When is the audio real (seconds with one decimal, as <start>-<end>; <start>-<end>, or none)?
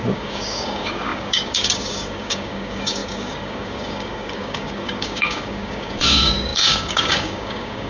none